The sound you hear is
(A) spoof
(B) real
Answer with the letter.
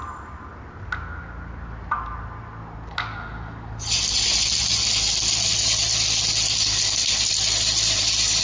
B